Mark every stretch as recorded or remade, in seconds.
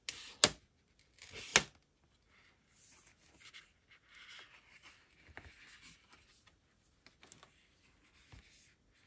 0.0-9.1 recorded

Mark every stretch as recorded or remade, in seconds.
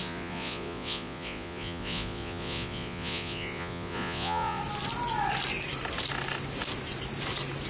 0.0-4.6 remade; 4.6-7.7 recorded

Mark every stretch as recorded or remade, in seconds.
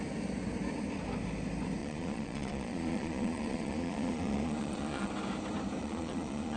0.0-1.8 recorded; 1.8-5.1 remade; 5.1-5.8 recorded; 5.8-6.6 remade